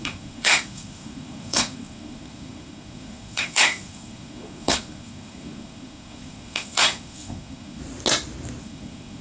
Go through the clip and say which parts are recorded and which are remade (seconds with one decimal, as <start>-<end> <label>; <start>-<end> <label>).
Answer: 0.0-7.8 remade; 7.8-8.6 recorded; 8.6-9.2 remade